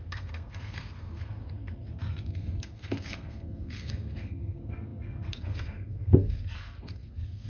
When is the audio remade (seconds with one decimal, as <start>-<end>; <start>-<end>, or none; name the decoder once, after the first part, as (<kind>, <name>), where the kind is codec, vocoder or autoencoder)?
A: 0.0-7.5 (codec, SNAC)